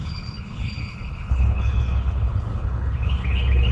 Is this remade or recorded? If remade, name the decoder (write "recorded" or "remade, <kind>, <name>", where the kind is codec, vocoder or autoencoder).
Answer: remade, codec, HILCodec